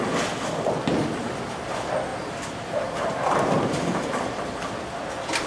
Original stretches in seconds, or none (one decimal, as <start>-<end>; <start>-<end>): 0.0-2.1; 4.5-5.5